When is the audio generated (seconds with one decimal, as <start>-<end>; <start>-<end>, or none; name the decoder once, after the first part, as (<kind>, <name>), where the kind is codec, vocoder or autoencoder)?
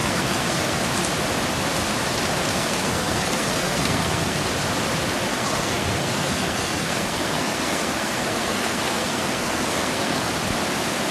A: 0.0-0.8 (codec, SNAC); 2.5-4.5; 5.3-10.3